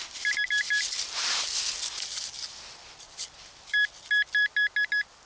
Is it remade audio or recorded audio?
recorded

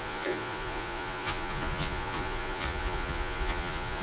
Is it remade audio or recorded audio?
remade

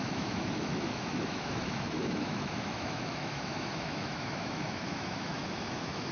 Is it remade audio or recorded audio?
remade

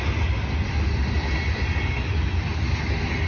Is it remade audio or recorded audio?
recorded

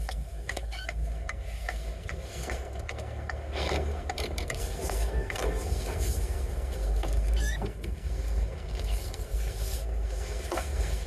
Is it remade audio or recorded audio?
remade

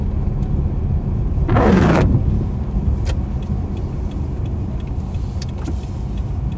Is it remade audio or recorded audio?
recorded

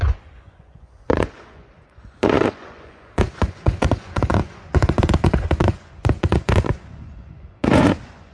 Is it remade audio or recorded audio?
remade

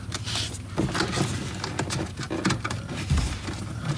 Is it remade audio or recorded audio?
recorded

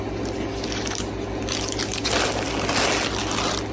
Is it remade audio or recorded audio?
recorded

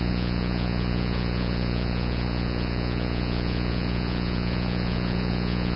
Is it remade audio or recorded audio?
remade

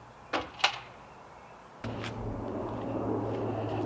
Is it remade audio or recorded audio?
recorded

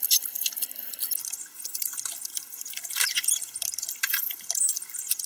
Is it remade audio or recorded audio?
remade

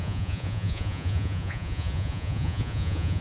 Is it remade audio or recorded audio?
remade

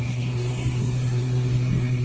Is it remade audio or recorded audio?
remade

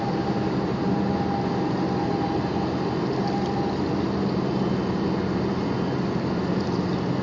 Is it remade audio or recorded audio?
recorded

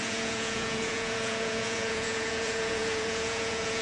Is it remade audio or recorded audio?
remade